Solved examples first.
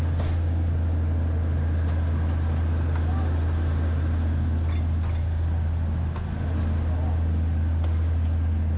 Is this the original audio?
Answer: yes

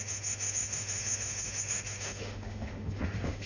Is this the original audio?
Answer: no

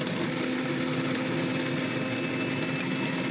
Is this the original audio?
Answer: yes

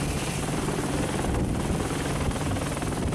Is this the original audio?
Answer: no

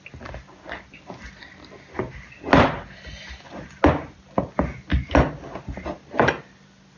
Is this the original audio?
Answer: yes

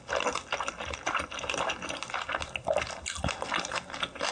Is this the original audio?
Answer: yes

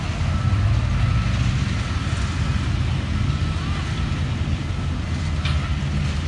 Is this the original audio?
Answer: yes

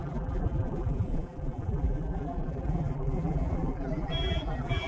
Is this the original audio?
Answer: no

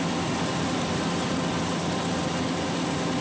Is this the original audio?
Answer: yes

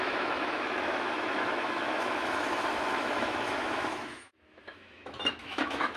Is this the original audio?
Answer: no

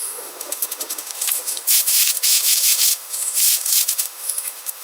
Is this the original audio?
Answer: no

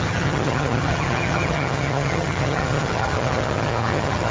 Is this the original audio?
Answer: no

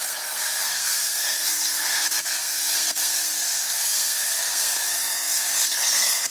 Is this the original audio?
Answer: no